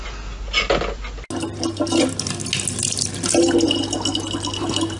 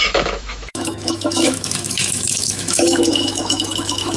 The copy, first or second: second